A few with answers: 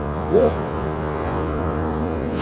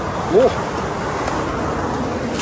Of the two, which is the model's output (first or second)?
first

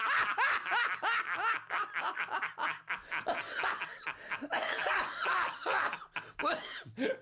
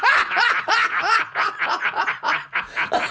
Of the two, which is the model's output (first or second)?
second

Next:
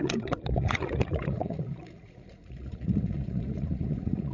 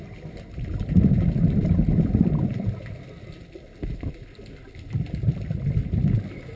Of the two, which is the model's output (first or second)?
first